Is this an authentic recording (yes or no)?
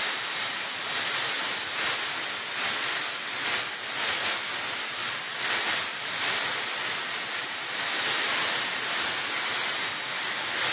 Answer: yes